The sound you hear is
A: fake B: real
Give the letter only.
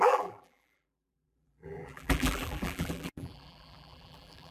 A